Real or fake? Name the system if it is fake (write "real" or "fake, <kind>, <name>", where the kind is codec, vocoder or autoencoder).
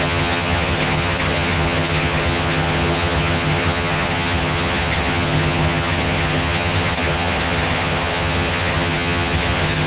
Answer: fake, vocoder, HiFi-GAN